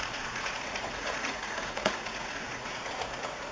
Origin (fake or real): fake